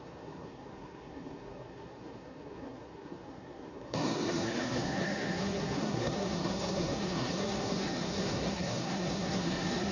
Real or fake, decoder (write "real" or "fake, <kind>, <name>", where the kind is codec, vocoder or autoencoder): fake, codec, SNAC